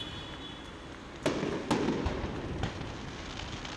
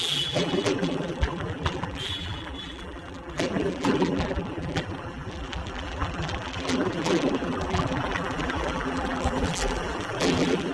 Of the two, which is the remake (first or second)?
second